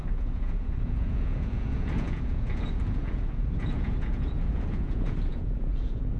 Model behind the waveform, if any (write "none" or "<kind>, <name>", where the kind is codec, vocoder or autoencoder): vocoder, Vocos